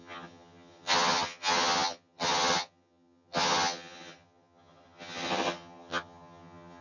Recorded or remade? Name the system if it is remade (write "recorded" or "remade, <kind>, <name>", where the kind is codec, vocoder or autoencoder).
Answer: remade, vocoder, HiFi-GAN